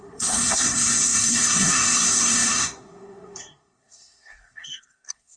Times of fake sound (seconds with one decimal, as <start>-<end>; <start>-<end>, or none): 0.0-5.4